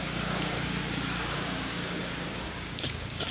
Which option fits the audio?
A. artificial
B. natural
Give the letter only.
A